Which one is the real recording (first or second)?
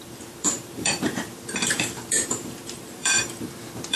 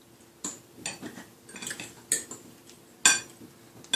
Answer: second